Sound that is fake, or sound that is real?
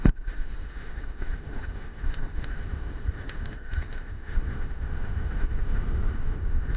fake